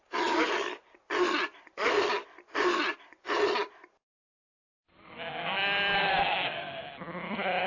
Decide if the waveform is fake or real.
real